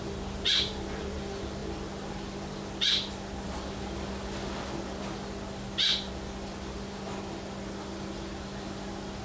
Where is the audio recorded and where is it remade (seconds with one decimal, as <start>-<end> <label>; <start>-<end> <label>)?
0.0-9.2 remade